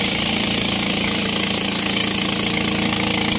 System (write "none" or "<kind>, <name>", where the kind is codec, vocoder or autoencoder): none